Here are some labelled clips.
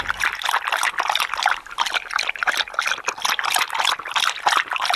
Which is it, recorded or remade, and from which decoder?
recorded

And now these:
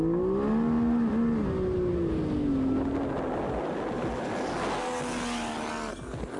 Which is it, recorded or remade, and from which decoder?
recorded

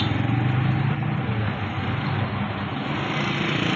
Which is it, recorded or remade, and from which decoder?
recorded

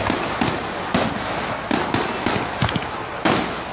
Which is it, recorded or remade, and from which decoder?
recorded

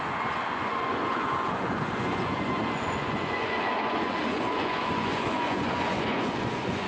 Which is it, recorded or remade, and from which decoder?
remade, vocoder, Vocos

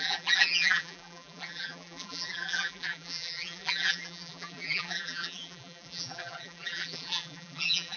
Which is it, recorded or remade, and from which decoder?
remade, vocoder, BigVGAN v2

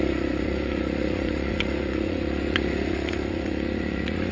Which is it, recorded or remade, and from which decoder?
remade, vocoder, Vocos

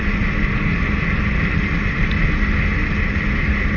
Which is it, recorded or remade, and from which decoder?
recorded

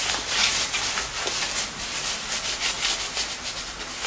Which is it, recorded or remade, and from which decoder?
recorded